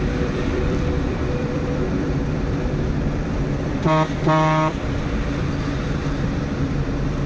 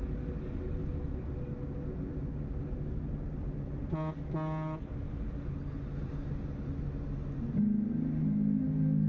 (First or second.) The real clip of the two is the second